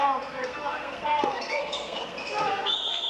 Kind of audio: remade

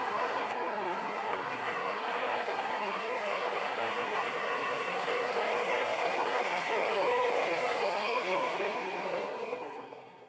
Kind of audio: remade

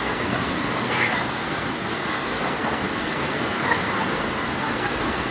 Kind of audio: remade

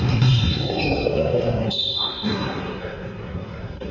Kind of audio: remade